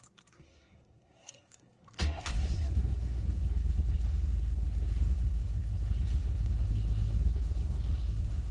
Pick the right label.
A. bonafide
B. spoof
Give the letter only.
B